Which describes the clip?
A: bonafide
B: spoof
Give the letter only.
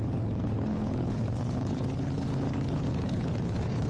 B